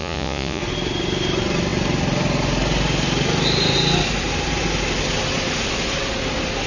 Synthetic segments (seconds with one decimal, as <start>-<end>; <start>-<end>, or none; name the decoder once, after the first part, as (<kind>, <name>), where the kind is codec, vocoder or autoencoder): 0.0-0.6 (vocoder, Vocos)